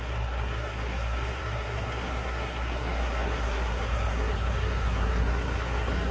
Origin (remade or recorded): remade